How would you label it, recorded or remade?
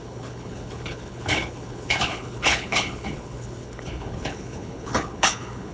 remade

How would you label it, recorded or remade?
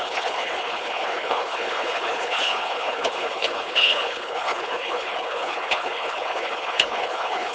remade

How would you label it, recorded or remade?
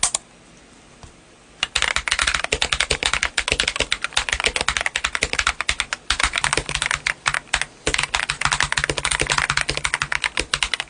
recorded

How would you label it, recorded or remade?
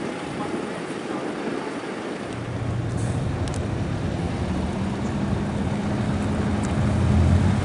recorded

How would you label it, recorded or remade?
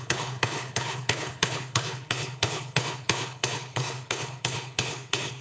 remade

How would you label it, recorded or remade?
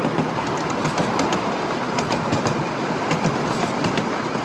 recorded